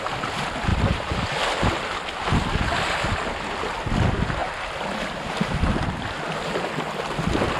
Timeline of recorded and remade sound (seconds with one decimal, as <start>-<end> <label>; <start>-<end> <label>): 0.0-7.6 recorded